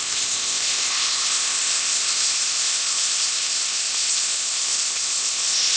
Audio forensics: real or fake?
fake